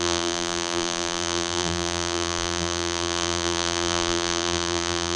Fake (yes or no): yes